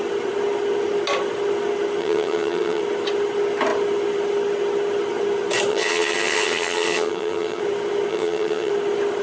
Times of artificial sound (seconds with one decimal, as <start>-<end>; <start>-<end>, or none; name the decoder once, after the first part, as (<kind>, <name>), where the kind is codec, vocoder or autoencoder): 2.0-2.8 (vocoder, HiFi-GAN); 5.7-7.6; 8.1-8.7